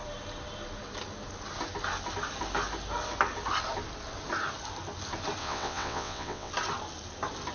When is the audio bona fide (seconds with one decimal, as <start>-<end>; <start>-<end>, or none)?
0.0-5.4; 6.5-7.5